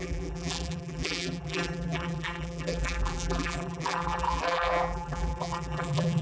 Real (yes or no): no